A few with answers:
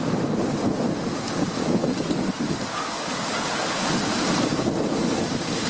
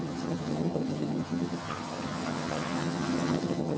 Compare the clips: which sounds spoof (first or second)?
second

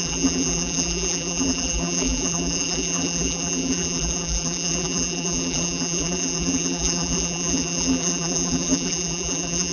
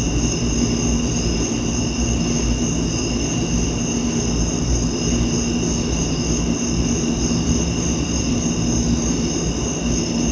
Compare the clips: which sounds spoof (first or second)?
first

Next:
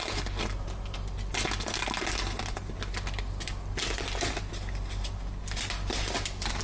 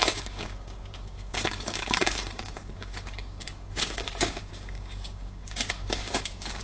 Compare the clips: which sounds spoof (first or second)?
second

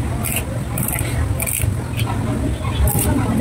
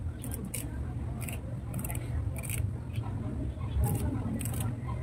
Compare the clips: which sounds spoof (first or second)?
second